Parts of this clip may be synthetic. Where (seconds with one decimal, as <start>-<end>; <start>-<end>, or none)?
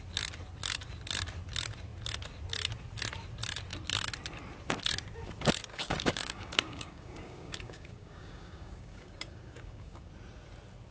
5.7-10.1